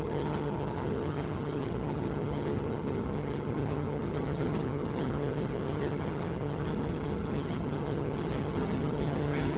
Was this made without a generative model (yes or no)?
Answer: no